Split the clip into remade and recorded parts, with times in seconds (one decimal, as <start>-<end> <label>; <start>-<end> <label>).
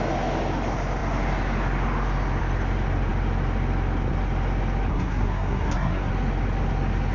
0.0-4.9 recorded; 4.9-6.1 remade; 6.1-7.1 recorded